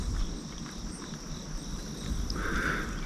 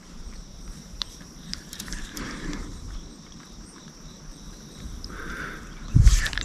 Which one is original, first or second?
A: first